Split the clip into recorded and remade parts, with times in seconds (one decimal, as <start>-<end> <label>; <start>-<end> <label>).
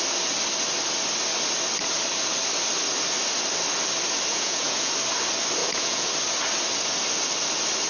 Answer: 0.0-4.3 recorded; 4.3-4.9 remade; 4.9-5.6 recorded; 5.6-6.1 remade; 6.1-7.9 recorded